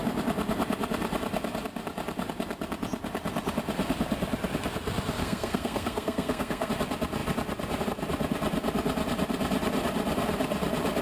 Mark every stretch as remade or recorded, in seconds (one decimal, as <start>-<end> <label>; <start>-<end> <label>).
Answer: 0.0-5.2 recorded; 5.2-6.7 remade; 6.7-11.0 recorded